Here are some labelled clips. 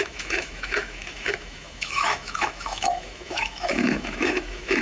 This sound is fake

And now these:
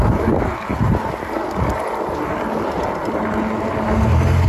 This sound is real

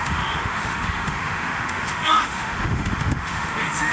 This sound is fake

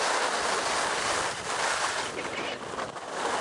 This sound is real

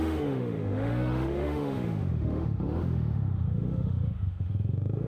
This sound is fake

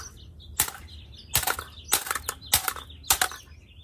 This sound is real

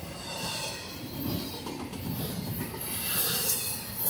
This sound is real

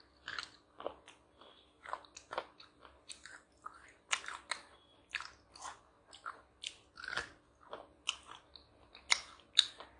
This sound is real